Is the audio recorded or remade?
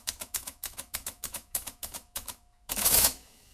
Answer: remade